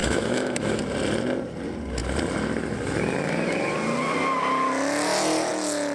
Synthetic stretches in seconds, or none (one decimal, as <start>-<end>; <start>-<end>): 0.0-0.8